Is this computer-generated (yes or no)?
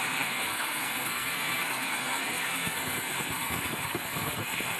yes